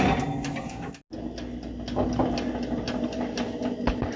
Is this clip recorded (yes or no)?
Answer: yes